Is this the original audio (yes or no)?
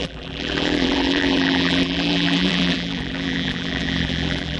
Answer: no